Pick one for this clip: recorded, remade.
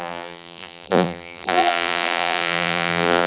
remade